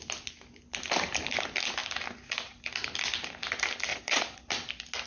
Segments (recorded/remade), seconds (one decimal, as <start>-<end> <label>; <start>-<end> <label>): 0.0-3.9 recorded; 3.9-4.4 remade; 4.4-5.1 recorded